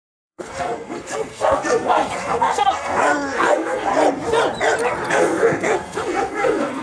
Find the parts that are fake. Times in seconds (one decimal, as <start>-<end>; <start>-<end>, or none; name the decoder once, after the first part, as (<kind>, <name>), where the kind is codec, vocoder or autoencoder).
0.0-3.9 (codec, SNAC); 5.1-6.8

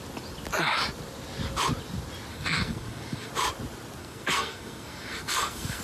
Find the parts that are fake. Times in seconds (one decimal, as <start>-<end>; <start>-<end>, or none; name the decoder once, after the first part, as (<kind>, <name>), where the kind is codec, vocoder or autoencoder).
2.3-3.3 (codec, SNAC); 4.0-5.8

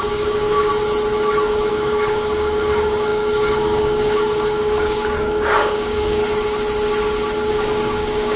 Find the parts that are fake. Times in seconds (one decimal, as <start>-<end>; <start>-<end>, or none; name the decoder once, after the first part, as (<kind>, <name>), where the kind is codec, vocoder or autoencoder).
0.0-0.7 (codec, DAC); 1.7-6.2; 7.5-8.4

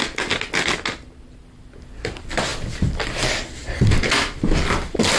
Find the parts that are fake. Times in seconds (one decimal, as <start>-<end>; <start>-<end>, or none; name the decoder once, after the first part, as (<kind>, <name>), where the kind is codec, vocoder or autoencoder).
none

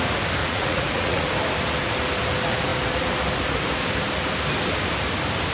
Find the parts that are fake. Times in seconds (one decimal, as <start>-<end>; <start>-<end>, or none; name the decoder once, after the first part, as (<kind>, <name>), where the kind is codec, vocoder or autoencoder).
0.4-1.3 (vocoder, Vocos)